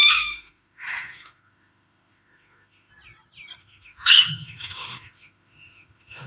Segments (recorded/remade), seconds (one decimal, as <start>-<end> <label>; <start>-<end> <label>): 0.0-2.9 remade; 2.9-3.6 recorded; 3.6-6.3 remade

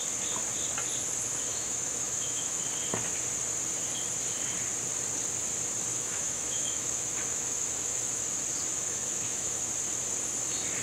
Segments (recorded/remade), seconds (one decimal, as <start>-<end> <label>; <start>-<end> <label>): 0.0-1.5 recorded; 1.5-2.6 remade; 2.6-5.9 recorded; 5.9-8.2 remade; 8.2-8.7 recorded; 8.7-9.7 remade; 9.7-10.8 recorded